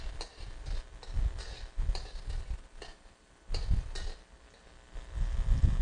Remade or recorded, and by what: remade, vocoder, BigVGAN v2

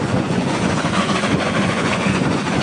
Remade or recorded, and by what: remade, vocoder, Vocos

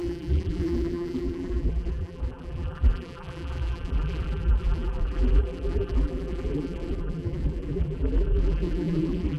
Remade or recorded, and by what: remade, vocoder, BigVGAN v2